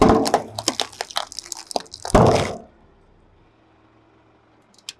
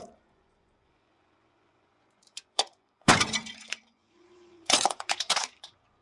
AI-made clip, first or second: second